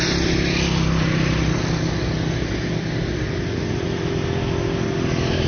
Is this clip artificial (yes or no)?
no